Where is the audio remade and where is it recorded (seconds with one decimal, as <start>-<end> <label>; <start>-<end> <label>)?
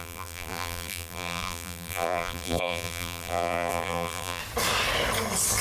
0.0-4.4 remade; 4.4-5.6 recorded